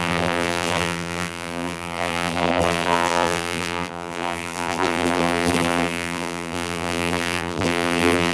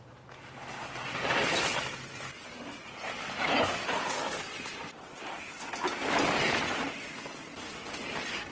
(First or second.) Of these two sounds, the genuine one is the second